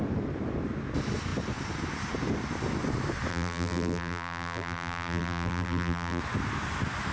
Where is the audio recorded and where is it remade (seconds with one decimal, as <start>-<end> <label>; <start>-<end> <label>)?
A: 0.0-3.3 recorded; 3.3-6.2 remade; 6.2-7.1 recorded